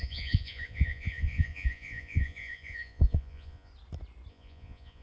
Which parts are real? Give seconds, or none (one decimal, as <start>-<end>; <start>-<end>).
3.7-4.3